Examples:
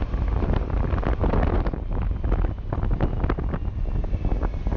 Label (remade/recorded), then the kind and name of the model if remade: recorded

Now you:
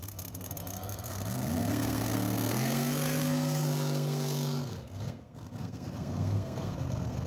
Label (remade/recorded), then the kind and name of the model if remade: remade, codec, SNAC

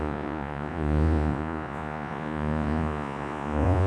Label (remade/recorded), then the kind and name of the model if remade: remade, vocoder, Vocos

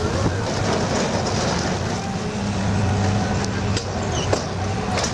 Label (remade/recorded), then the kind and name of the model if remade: recorded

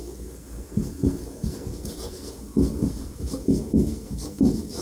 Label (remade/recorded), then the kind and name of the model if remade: remade, codec, SNAC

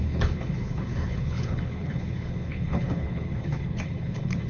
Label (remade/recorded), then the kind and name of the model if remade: remade, codec, HILCodec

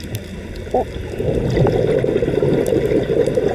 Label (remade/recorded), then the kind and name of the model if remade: recorded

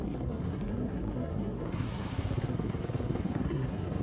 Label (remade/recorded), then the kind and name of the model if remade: remade, codec, SNAC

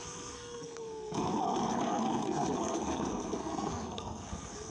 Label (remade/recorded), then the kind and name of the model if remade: remade, codec, SNAC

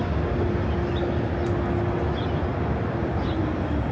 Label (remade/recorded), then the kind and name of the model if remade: recorded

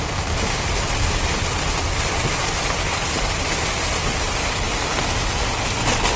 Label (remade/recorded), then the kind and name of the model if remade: recorded